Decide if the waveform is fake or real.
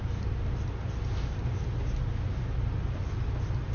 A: real